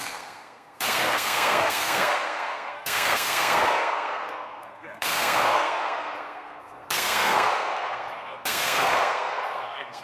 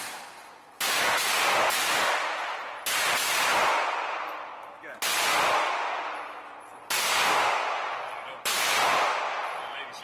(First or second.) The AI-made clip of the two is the first